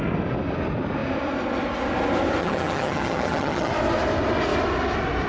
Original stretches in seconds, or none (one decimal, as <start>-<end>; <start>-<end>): 0.0-2.4; 3.7-5.3